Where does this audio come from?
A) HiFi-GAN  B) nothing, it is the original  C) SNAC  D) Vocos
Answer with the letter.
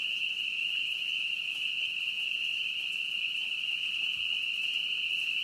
B